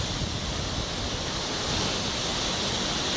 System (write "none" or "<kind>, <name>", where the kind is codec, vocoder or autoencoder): none